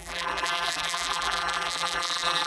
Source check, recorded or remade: remade